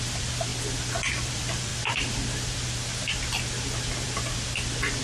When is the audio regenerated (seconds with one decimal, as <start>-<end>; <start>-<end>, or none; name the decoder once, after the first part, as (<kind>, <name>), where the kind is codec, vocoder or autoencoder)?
0.0-0.5 (vocoder, BigVGAN v2); 1.1-1.7